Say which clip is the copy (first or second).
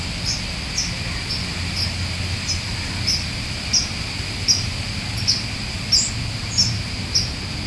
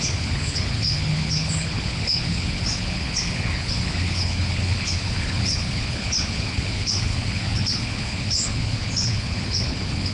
second